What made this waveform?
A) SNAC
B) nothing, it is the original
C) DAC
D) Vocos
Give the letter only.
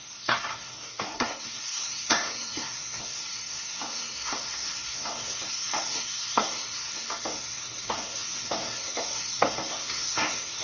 A